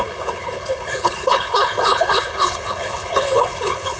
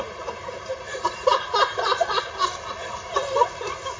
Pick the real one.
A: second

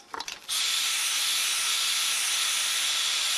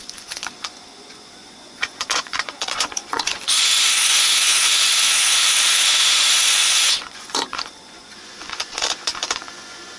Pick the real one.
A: first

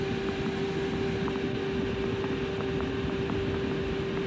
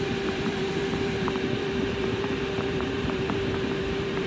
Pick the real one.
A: first